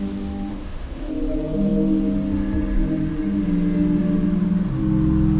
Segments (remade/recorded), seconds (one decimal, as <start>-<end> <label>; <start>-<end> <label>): 0.0-0.5 recorded; 0.5-1.1 remade; 1.1-5.4 recorded